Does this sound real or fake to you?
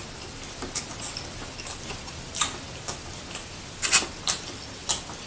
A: real